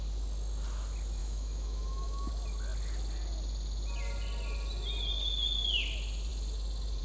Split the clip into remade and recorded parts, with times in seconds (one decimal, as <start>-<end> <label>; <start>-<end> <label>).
0.0-1.2 recorded; 1.2-2.3 remade; 2.3-7.0 recorded